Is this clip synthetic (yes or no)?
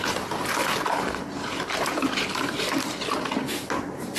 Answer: no